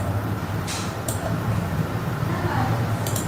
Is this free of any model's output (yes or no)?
no